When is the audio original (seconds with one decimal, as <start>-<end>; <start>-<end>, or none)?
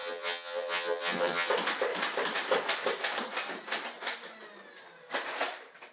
1.5-5.9